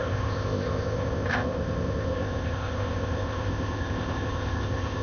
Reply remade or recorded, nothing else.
remade